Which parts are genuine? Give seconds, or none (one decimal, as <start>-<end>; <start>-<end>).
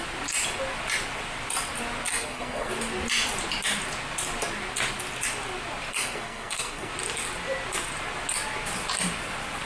0.0-2.1; 2.7-5.9; 6.9-9.7